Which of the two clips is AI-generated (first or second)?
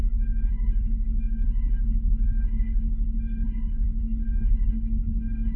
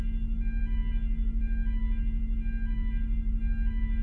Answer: first